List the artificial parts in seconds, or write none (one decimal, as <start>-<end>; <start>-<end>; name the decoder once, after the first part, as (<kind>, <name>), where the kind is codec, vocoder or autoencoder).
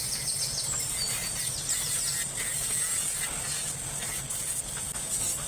none